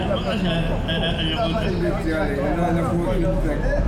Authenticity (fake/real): real